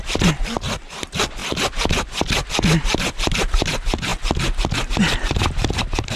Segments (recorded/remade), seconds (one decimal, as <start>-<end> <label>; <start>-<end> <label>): 0.0-6.2 recorded